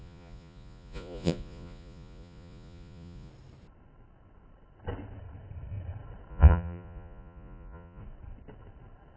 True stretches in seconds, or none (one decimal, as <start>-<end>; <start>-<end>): 3.3-6.3; 8.0-9.2